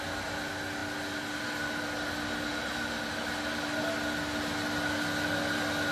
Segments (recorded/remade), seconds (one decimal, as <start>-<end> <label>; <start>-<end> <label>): 0.0-5.9 recorded